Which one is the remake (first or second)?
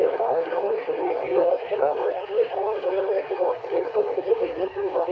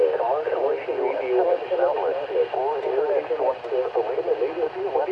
first